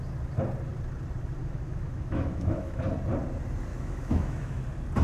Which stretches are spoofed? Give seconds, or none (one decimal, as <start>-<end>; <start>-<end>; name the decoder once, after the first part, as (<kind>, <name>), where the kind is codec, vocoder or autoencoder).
1.4-2.8 (autoencoder, DAC-VAE); 3.7-4.6